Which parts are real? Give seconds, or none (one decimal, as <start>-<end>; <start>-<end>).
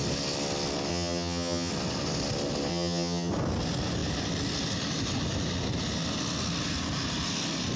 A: 0.0-0.9; 1.7-2.7; 3.3-7.8